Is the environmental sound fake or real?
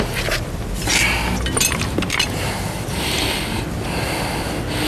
real